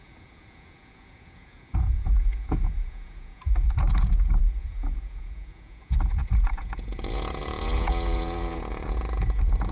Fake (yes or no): yes